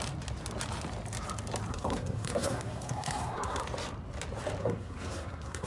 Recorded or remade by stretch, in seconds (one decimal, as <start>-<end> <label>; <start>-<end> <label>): 0.0-1.7 recorded; 1.7-3.6 remade; 3.6-4.6 recorded; 4.6-5.7 remade